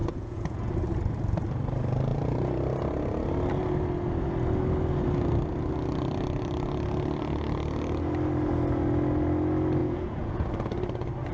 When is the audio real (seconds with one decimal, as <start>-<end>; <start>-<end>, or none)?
0.7-9.8; 10.5-11.3